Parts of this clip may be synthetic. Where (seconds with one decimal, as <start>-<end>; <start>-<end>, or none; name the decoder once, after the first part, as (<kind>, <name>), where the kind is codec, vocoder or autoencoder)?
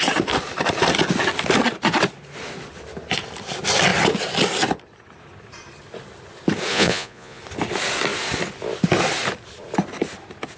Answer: 6.7-7.4 (vocoder, Vocos)